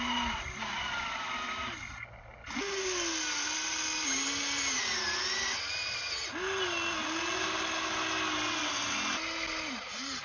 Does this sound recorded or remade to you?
recorded